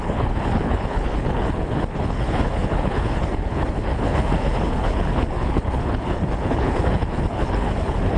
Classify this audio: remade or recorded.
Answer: remade